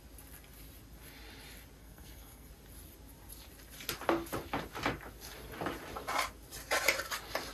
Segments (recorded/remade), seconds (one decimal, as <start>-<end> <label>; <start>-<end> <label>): 0.0-1.8 recorded; 1.8-2.5 remade; 2.5-7.5 recorded